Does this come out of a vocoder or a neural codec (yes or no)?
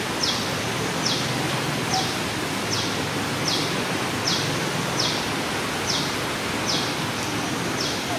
no